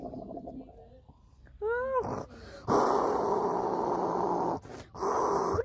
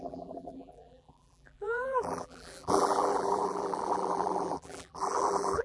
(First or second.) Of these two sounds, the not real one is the second